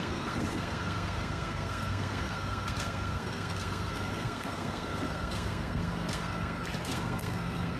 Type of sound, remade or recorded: remade